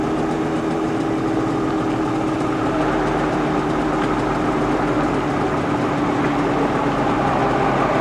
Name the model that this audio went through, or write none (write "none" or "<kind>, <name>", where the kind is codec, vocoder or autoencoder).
none